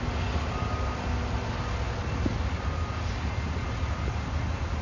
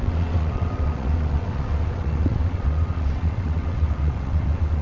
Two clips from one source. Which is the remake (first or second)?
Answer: second